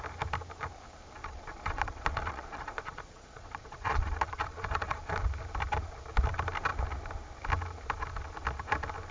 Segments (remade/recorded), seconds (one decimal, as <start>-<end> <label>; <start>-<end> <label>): 0.0-1.2 recorded; 1.2-5.1 remade; 5.1-9.1 recorded